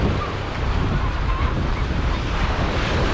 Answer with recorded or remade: remade